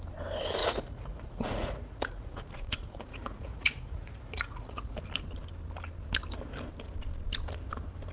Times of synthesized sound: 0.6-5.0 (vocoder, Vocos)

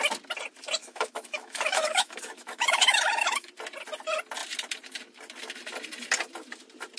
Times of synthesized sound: 0.8-3.5 (autoencoder, DAC-VAE)

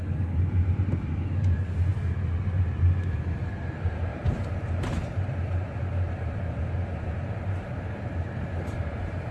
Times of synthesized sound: 4.1-9.3 (vocoder, BigVGAN v2)

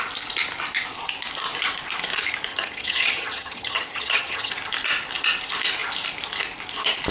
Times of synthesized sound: 2.5-4.5 (vocoder, HiFi-GAN)

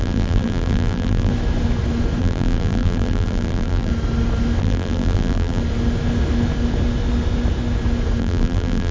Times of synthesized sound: 0.0-1.3 (vocoder, BigVGAN v2); 2.2-3.9; 4.6-5.6; 8.2-8.9

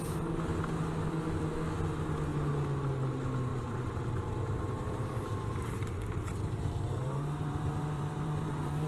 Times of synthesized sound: 3.5-8.9 (vocoder, BigVGAN v2)

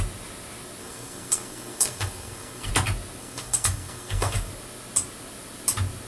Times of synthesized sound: 0.8-2.7 (codec, SNAC); 3.2-4.5

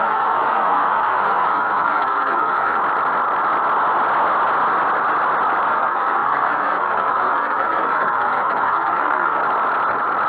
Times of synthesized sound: 0.0-2.8 (codec, SNAC); 5.7-9.4